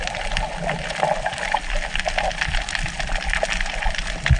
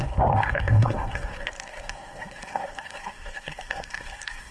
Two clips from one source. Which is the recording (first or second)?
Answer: first